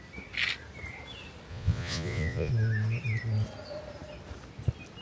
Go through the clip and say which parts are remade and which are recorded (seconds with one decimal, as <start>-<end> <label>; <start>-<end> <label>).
0.0-1.5 recorded; 1.5-2.5 remade; 2.5-5.0 recorded

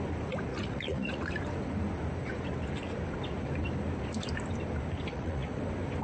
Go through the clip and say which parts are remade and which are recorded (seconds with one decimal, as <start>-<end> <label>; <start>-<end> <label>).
0.0-0.5 recorded; 0.5-1.3 remade; 1.3-5.1 recorded; 5.1-5.6 remade; 5.6-6.0 recorded

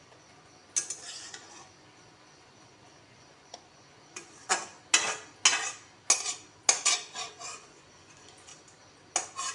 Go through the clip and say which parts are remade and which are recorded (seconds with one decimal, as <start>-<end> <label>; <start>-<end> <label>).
0.0-0.6 remade; 0.6-1.1 recorded; 1.1-4.7 remade; 4.7-6.7 recorded; 6.7-8.5 remade; 8.5-9.5 recorded

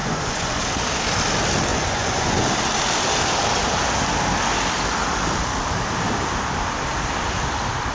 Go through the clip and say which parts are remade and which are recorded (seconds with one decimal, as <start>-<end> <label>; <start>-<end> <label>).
0.0-0.6 remade; 0.6-1.7 recorded; 1.7-2.4 remade; 2.4-7.9 recorded

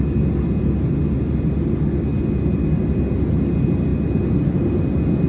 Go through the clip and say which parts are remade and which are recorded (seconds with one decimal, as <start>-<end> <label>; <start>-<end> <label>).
0.0-5.3 recorded

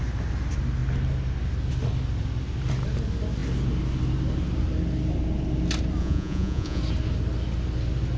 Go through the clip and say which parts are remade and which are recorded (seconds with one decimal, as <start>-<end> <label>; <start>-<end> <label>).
0.0-6.0 recorded; 6.0-6.8 remade; 6.8-8.2 recorded

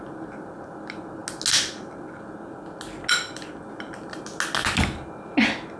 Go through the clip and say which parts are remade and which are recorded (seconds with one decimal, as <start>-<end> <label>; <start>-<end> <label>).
0.0-5.8 recorded